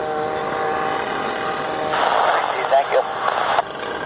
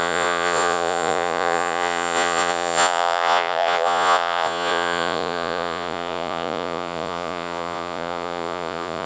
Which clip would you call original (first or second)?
first